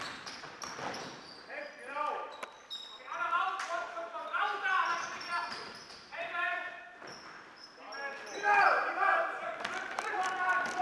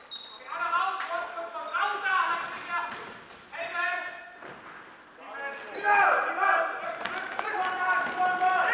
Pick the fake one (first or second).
first